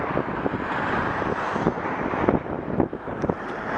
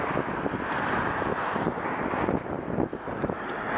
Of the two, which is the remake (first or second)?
first